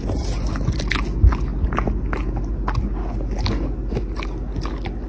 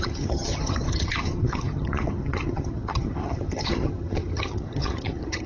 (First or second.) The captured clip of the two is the first